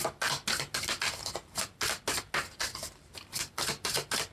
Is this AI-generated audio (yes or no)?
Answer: no